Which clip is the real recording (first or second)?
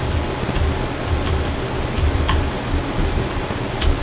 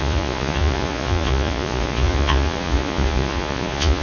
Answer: first